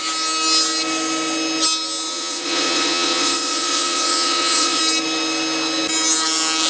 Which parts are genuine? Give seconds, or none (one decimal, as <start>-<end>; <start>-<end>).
0.0-2.1; 4.8-6.7